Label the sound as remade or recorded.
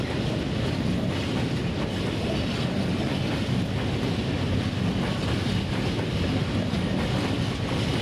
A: recorded